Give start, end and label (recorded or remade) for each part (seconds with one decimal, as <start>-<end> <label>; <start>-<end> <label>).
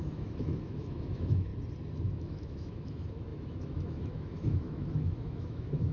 0.0-1.5 remade; 1.5-2.0 recorded; 2.0-5.9 remade